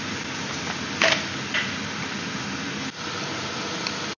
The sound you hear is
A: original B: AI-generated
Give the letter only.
A